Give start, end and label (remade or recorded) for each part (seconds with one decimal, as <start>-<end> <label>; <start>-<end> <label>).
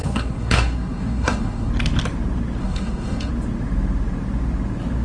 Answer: 0.0-1.7 remade; 1.7-2.6 recorded; 2.6-3.3 remade; 3.3-5.0 recorded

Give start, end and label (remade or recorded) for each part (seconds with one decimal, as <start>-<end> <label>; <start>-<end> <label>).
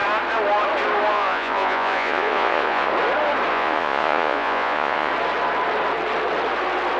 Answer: 0.0-1.1 recorded; 1.1-2.9 remade; 2.9-3.5 recorded; 3.5-5.1 remade; 5.1-7.0 recorded